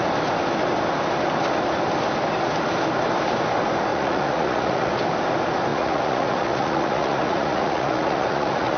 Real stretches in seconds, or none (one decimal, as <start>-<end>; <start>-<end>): 0.0-3.9; 4.9-5.7